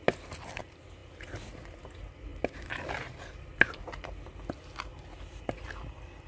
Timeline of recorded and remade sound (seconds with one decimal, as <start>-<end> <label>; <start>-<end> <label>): 0.0-0.6 remade; 0.6-2.3 recorded; 2.3-3.8 remade; 3.8-4.9 recorded; 4.9-5.6 remade; 5.6-6.3 recorded

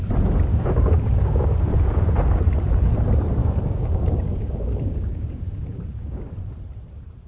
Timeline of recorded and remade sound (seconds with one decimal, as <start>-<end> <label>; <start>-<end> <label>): 0.0-0.5 recorded; 0.5-2.1 remade; 2.1-3.4 recorded; 3.4-6.3 remade; 6.3-7.3 recorded

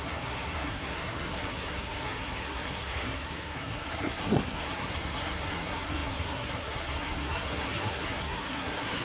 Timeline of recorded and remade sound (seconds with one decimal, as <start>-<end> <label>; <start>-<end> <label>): 0.0-9.0 remade

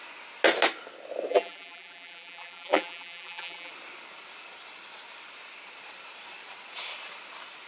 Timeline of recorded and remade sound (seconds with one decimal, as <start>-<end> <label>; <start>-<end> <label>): 0.0-1.3 recorded; 1.3-3.7 remade; 3.7-7.7 recorded